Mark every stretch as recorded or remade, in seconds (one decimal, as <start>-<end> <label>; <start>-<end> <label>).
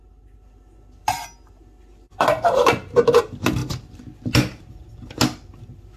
0.0-6.0 recorded